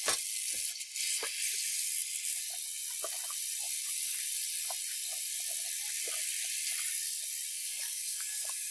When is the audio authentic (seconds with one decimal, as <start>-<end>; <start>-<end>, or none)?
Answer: 0.0-7.5